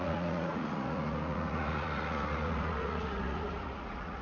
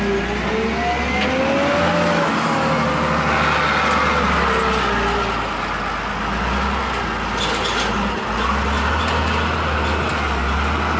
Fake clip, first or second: first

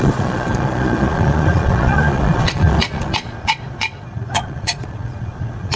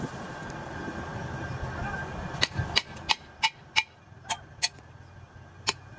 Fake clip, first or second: first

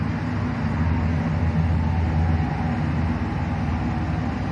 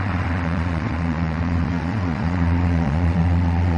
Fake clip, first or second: second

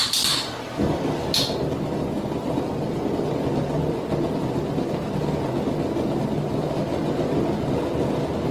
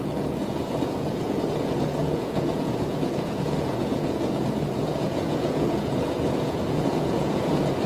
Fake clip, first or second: second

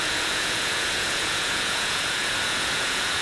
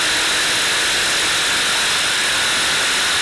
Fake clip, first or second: first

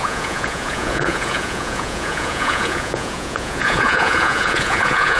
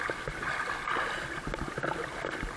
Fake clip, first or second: first